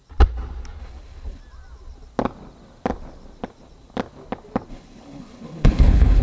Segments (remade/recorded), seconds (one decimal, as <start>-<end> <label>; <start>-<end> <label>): 0.0-0.8 recorded; 0.8-1.4 remade; 1.4-4.7 recorded; 4.7-6.2 remade